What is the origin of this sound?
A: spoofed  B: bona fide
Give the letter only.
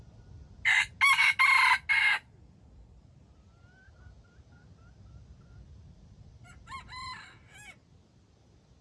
B